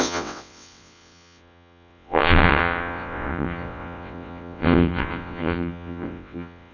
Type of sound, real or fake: fake